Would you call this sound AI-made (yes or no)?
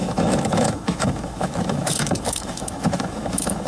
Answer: yes